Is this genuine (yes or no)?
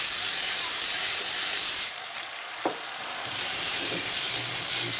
no